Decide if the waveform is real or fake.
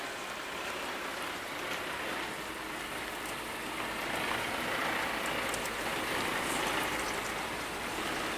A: real